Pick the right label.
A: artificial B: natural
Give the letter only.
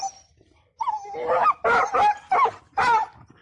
B